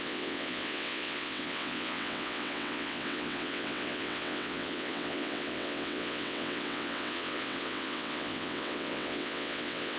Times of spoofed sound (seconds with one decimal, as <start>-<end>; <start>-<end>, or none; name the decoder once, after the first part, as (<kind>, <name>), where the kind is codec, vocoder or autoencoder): 0.0-10.0 (vocoder, WaveNeXt)

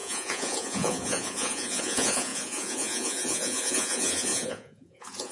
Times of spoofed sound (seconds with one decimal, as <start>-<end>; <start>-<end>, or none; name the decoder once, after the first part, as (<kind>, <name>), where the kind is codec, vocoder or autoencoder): 0.0-5.3 (vocoder, Vocos)